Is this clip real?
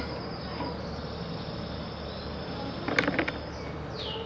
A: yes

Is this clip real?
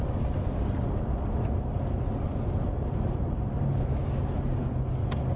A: yes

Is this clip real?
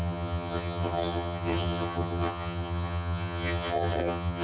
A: no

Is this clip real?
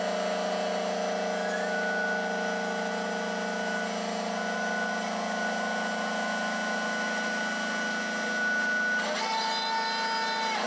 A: yes